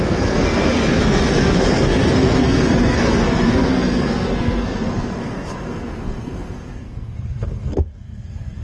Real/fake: fake